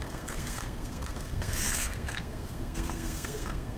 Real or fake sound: fake